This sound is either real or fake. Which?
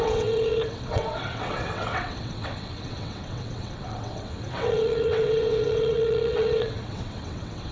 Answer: fake